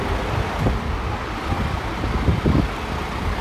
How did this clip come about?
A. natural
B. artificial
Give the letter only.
A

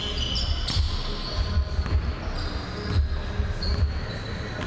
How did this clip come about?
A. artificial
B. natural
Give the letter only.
B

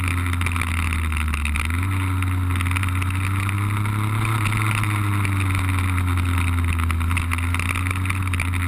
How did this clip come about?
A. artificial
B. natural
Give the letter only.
B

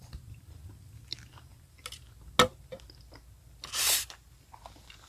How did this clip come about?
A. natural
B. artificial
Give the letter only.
A